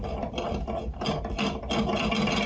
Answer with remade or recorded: recorded